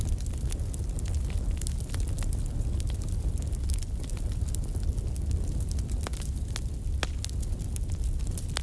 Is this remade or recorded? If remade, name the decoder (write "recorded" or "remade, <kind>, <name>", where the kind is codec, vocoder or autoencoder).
recorded